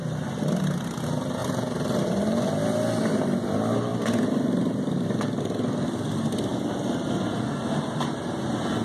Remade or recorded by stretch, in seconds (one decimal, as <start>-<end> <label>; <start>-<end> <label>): 0.0-8.8 recorded